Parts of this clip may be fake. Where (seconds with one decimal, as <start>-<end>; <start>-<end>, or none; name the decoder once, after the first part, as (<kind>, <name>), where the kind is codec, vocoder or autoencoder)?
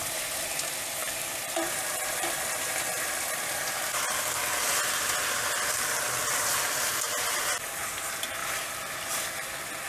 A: 1.0-4.2 (vocoder, BigVGAN v2); 8.4-9.5